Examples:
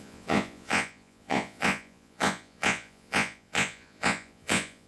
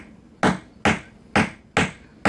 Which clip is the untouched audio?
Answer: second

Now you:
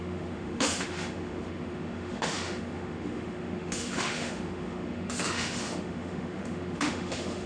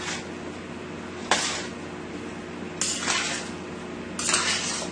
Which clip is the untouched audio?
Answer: second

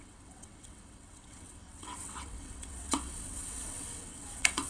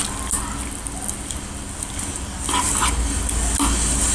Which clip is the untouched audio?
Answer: second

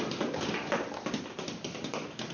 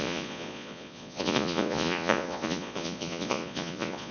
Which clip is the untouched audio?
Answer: first